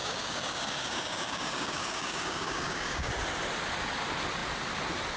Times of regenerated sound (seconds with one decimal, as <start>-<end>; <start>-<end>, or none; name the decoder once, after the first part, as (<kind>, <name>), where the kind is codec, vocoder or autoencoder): 0.0-3.1 (codec, DAC)